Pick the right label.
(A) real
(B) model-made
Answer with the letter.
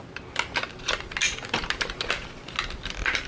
A